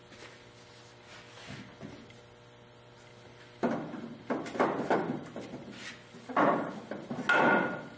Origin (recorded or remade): recorded